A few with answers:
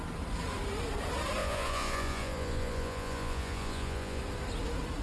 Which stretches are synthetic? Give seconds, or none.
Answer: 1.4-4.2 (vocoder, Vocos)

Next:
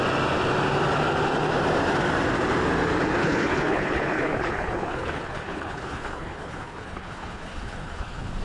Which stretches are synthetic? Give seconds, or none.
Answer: 3.2-8.4 (codec, HILCodec)

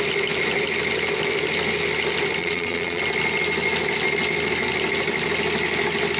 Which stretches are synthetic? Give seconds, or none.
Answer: 2.4-3.0 (vocoder, Vocos)

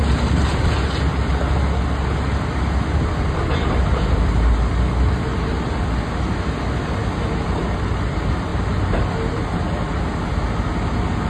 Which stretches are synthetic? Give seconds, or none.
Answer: none

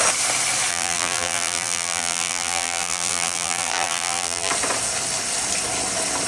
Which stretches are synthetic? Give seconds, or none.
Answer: 0.7-4.5 (vocoder, BigVGAN v2)

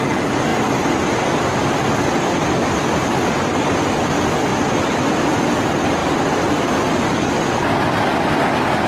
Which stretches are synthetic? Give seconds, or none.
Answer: none

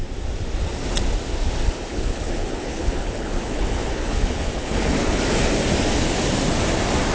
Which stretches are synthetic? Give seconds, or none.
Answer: 1.9-5.2 (codec, HILCodec)